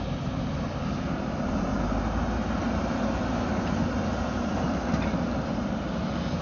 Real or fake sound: real